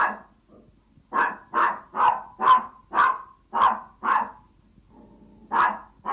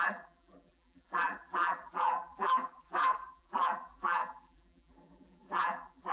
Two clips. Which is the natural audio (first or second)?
first